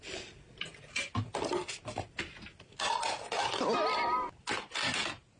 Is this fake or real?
real